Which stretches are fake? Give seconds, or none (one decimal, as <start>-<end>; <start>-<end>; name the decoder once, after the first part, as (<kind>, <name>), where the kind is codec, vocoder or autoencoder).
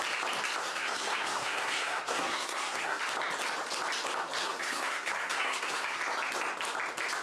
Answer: 0.6-3.0 (codec, SNAC); 4.4-6.0